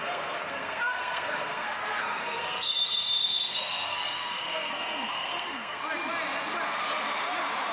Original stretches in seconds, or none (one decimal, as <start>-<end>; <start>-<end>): 5.8-7.7